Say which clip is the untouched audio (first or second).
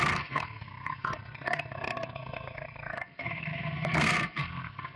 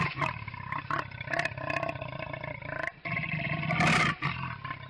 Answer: second